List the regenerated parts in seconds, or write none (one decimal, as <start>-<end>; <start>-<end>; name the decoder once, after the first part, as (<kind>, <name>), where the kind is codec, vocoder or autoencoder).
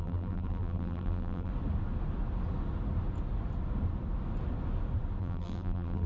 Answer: 0.0-1.5 (vocoder, BigVGAN v2); 5.2-6.1